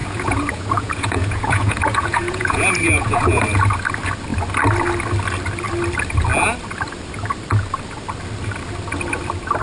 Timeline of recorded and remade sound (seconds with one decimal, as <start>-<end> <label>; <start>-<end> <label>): 0.0-3.4 remade; 3.4-9.6 recorded